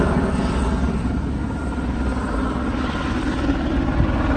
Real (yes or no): yes